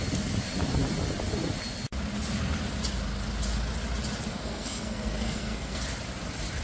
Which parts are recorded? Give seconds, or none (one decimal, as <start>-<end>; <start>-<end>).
0.0-4.3; 5.8-6.6